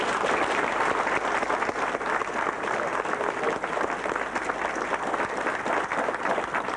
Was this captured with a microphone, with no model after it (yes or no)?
yes